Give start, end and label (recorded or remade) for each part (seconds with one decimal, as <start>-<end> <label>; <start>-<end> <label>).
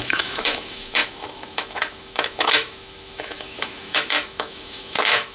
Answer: 0.0-5.3 remade